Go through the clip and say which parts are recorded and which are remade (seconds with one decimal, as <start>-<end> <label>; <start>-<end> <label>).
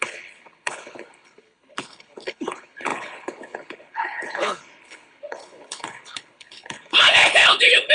0.0-7.9 remade